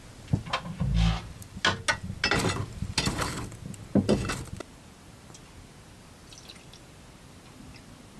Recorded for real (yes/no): yes